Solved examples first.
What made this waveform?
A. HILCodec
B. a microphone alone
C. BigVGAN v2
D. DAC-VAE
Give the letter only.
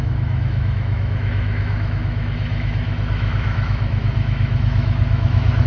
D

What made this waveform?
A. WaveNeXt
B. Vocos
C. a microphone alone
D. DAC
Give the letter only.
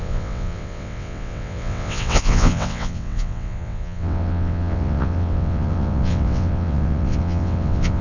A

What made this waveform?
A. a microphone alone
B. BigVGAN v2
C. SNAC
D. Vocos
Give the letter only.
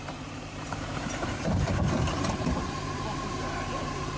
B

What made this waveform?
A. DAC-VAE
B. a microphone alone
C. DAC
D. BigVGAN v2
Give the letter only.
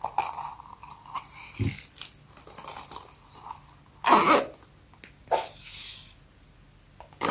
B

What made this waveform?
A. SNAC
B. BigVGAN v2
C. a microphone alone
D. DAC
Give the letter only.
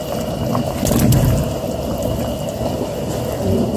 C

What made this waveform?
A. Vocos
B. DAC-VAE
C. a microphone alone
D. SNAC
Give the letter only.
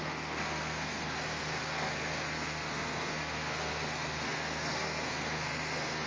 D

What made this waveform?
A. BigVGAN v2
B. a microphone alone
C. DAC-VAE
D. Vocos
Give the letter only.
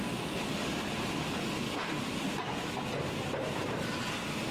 B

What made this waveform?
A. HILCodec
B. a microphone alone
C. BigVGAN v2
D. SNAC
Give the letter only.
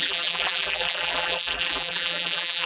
C